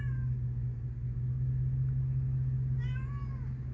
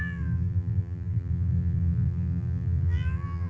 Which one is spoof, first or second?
second